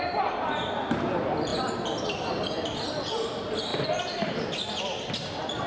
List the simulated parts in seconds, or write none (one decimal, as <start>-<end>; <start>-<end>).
none